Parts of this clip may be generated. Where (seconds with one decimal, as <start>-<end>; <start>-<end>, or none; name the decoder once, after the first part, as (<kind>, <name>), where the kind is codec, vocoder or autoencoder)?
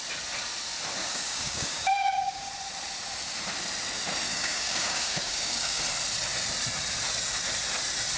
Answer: 1.0-2.5 (codec, DAC); 4.3-5.8